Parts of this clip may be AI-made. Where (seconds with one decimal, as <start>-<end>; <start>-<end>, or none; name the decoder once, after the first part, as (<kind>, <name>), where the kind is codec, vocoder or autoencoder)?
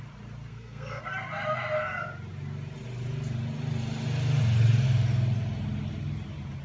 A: 0.5-1.0 (codec, SNAC)